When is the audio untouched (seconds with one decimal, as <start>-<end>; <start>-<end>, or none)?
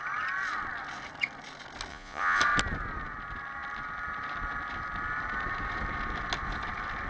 0.0-1.9; 2.4-7.1